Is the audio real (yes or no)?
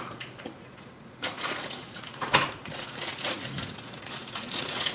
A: no